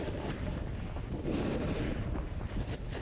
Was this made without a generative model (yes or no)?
yes